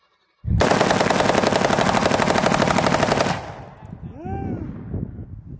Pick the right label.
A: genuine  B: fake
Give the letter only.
A